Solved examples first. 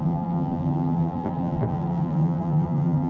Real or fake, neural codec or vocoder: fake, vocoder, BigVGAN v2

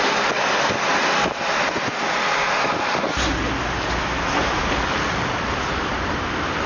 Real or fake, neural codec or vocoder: real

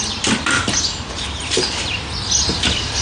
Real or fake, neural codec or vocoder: fake, vocoder, BigVGAN v2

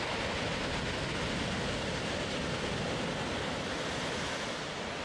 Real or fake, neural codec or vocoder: real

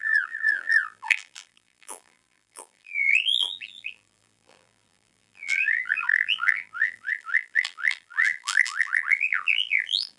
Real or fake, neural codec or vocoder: fake, vocoder, BigVGAN v2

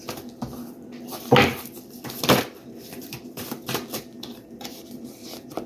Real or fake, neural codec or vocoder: fake, vocoder, BigVGAN v2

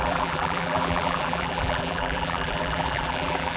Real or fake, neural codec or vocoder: fake, vocoder, BigVGAN v2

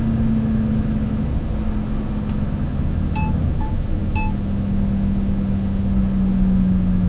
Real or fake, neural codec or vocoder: real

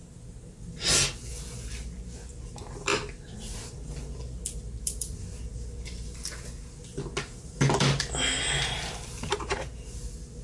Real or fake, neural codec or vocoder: real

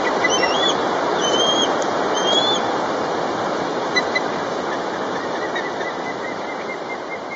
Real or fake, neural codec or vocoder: fake, vocoder, BigVGAN v2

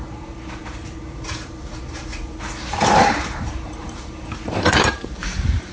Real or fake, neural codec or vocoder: fake, vocoder, BigVGAN v2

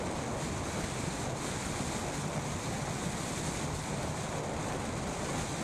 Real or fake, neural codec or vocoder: real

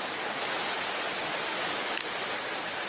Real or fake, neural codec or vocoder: real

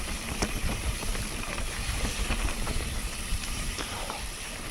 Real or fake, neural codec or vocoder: fake, vocoder, BigVGAN v2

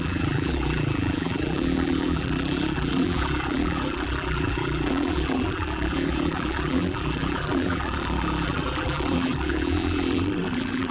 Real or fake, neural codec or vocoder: fake, vocoder, BigVGAN v2